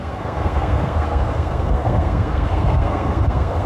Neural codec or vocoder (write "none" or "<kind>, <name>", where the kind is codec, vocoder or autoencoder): codec, SNAC